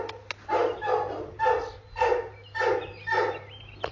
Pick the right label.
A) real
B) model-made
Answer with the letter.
A